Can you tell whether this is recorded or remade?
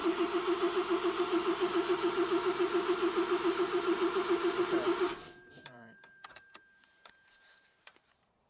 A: remade